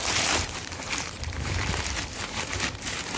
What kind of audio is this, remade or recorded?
remade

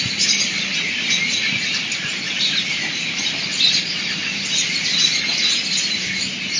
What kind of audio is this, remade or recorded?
recorded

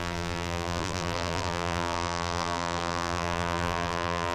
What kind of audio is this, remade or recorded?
remade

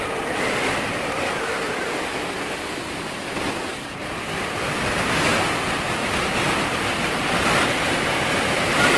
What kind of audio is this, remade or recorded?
recorded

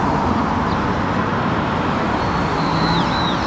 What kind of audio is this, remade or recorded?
recorded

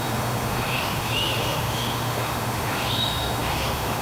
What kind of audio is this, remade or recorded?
remade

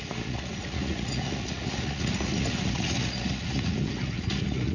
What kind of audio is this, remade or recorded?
remade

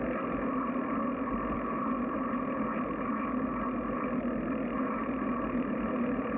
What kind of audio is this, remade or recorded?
recorded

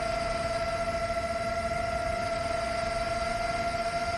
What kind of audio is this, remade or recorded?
recorded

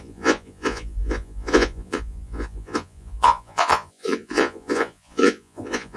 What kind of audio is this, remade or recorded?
remade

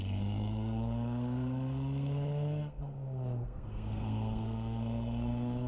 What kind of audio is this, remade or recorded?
remade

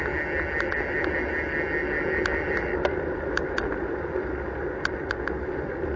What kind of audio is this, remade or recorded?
recorded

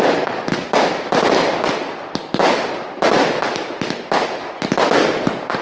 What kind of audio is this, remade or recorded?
recorded